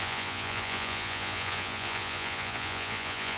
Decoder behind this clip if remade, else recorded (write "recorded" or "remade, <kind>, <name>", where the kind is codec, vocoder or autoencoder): remade, vocoder, Vocos